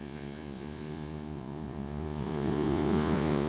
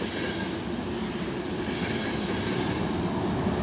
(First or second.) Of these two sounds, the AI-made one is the first